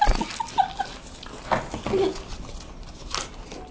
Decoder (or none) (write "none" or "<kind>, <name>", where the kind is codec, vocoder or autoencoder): none